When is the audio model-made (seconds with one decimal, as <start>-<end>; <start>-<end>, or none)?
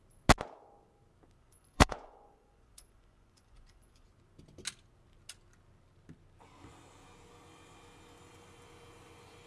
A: 1.4-4.1